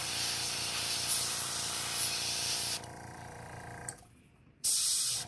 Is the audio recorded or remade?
remade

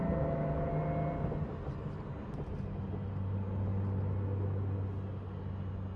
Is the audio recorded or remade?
recorded